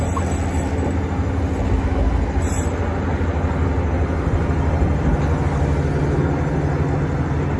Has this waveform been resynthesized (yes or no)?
no